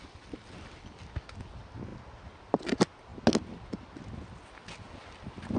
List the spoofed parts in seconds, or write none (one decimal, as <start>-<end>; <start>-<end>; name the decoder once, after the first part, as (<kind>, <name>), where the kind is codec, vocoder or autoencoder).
none

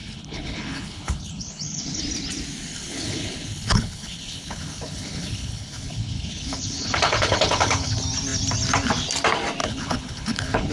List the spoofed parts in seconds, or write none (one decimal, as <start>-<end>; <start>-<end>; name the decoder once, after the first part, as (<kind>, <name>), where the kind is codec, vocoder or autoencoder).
0.0-2.0 (codec, HILCodec); 2.7-7.9; 9.6-10.7